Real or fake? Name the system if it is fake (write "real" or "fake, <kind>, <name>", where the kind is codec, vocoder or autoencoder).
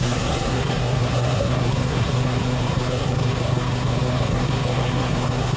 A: fake, codec, SNAC